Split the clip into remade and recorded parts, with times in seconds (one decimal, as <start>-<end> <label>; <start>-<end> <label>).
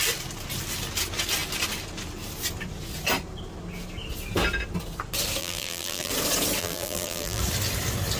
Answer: 0.0-5.4 recorded; 5.4-6.1 remade; 6.1-6.6 recorded; 6.6-7.4 remade; 7.4-8.2 recorded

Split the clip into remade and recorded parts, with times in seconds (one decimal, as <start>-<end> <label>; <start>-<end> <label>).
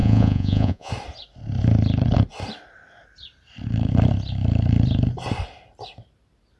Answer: 0.0-0.9 remade; 0.9-6.6 recorded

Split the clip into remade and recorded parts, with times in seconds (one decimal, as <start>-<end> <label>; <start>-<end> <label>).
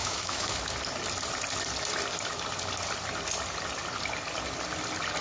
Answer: 0.0-0.6 remade; 0.6-5.2 recorded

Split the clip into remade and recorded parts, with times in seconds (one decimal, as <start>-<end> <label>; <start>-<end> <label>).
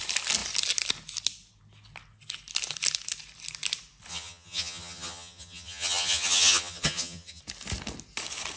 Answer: 0.0-4.1 recorded; 4.1-7.4 remade; 7.4-8.6 recorded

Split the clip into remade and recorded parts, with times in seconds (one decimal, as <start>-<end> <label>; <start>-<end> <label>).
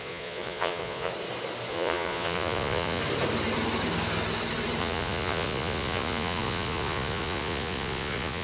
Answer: 0.0-1.1 remade; 1.1-1.7 recorded; 1.7-3.0 remade; 3.0-4.8 recorded; 4.8-8.4 remade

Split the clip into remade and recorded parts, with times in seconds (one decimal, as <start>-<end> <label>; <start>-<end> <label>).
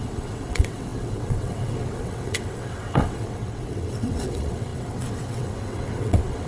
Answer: 0.0-6.5 remade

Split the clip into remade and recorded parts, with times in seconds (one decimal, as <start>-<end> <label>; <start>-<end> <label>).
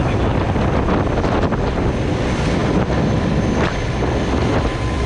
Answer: 0.0-2.6 recorded; 2.6-5.1 remade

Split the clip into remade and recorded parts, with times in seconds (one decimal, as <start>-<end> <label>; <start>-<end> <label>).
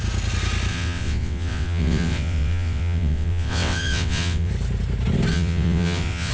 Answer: 0.0-0.7 recorded; 0.7-4.5 remade; 4.5-5.3 recorded; 5.3-6.3 remade